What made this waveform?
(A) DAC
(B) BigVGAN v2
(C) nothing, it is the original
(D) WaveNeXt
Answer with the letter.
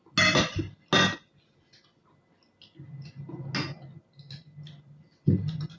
C